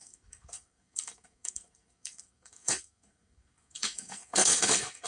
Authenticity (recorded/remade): remade